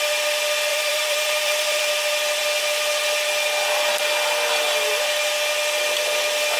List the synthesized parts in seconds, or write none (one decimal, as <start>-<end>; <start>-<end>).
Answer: 0.7-1.8